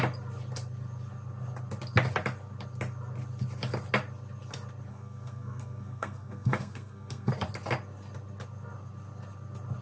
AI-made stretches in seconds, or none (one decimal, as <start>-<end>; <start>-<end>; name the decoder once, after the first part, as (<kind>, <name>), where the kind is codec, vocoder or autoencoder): 4.9-7.3 (codec, SNAC)